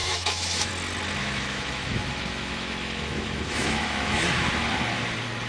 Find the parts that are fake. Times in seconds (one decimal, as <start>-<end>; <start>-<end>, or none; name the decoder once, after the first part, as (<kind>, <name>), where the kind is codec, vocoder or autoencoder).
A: 0.0-0.7 (autoencoder, DAC-VAE); 1.2-4.5